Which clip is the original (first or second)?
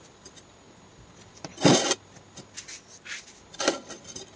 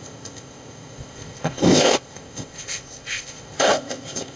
first